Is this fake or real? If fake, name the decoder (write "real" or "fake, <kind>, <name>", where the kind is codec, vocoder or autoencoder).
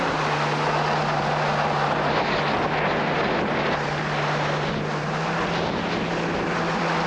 real